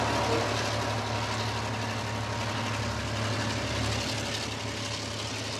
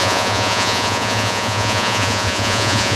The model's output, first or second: second